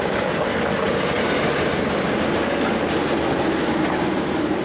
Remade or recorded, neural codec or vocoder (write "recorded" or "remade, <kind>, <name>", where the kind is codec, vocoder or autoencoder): recorded